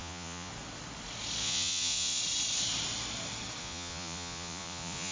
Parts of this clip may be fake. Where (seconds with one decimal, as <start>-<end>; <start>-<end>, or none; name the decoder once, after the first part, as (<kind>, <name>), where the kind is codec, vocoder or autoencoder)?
0.0-0.5 (vocoder, Vocos); 1.4-2.2; 3.6-5.1